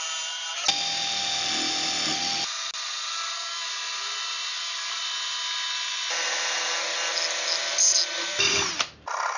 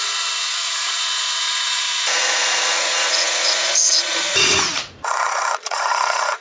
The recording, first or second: first